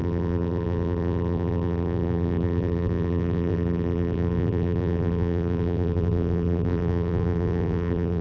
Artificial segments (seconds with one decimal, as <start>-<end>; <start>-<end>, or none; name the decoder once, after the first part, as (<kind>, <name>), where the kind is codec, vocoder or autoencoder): 0.0-8.2 (vocoder, BigVGAN v2)